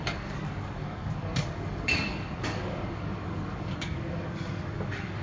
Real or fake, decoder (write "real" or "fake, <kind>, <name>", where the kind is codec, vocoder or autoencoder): fake, codec, DAC